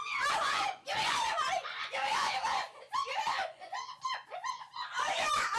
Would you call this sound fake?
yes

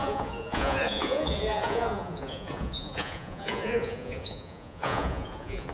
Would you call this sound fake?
yes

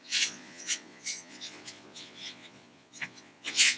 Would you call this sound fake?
yes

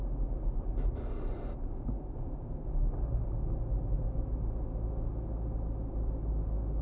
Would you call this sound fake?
no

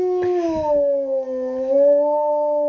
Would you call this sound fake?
no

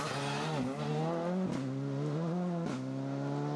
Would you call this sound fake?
no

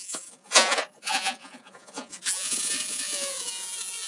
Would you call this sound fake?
yes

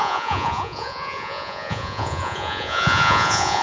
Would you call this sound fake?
yes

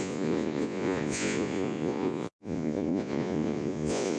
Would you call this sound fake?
yes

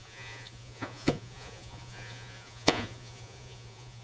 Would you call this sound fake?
yes